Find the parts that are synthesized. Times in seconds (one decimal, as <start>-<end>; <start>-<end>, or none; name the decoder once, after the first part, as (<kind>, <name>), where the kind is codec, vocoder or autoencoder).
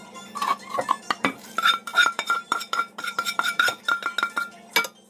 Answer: 0.0-0.5 (vocoder, BigVGAN v2); 1.0-4.1